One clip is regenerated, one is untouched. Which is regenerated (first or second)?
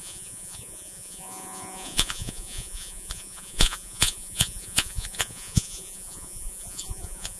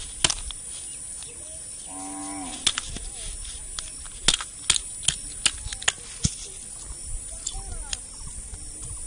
first